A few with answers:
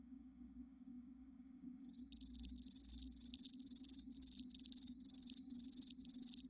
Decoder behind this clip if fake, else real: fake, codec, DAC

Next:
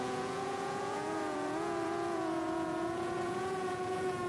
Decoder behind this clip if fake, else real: fake, vocoder, Vocos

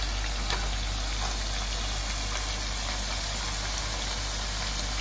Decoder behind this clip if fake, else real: real